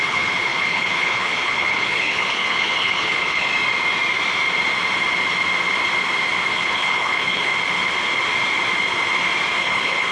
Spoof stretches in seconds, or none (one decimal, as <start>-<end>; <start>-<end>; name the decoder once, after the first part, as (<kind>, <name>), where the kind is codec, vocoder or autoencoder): 0.0-3.5 (codec, HILCodec); 6.5-7.5; 9.6-10.1